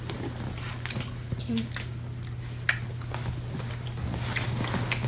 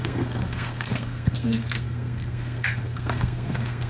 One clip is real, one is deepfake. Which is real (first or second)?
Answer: first